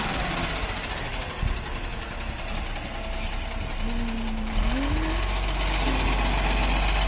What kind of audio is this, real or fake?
real